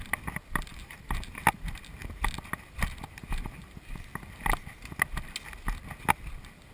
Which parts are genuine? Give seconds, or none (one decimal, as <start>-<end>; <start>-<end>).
0.0-0.7; 1.4-6.7

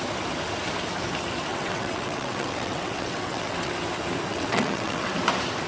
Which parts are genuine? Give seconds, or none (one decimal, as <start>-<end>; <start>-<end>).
0.0-1.5; 3.7-4.3; 5.1-5.7

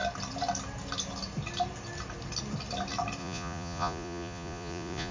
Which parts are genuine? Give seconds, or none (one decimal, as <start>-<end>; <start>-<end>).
0.0-3.2

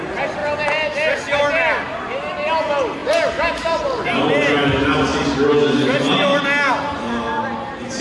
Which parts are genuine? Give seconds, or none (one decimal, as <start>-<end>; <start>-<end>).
0.0-8.0

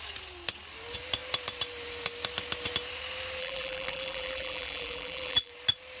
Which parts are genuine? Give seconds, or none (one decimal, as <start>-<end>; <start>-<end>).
0.0-3.4; 5.5-6.0

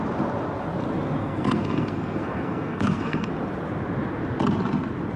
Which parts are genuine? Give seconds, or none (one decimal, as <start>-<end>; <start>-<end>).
0.0-1.2; 3.3-5.2